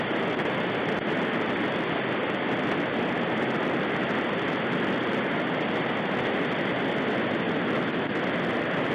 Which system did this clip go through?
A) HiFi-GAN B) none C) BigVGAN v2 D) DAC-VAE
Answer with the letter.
B